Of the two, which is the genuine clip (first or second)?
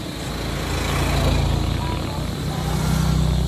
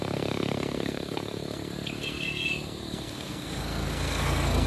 first